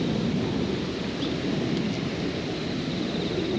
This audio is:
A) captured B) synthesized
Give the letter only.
A